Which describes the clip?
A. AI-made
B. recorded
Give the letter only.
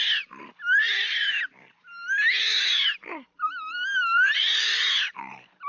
A